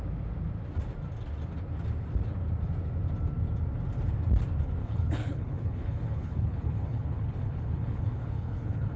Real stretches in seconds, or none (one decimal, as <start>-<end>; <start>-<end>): 0.0-4.8